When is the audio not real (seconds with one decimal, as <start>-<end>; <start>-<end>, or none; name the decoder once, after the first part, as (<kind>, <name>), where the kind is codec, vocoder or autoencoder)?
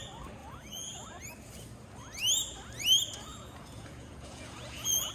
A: 0.4-1.2 (vocoder, Vocos); 3.3-5.1